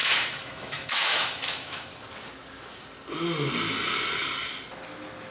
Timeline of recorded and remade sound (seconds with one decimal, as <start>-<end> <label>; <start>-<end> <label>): 0.0-1.9 remade; 1.9-5.3 recorded